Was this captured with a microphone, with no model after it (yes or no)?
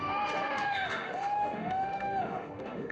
no